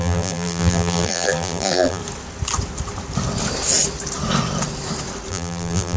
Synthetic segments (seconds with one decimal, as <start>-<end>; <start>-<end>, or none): 0.0-2.0; 5.3-6.0